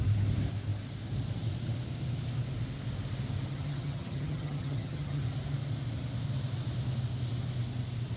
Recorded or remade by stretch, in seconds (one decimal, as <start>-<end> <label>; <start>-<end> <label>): 0.0-3.5 recorded; 3.5-5.2 remade; 5.2-8.2 recorded